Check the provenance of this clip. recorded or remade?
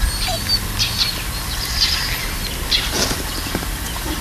recorded